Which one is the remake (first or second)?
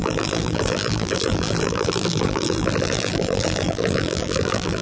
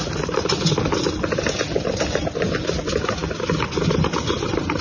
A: first